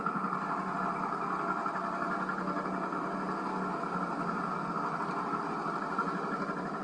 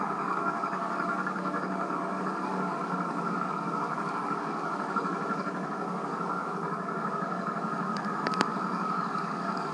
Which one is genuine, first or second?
first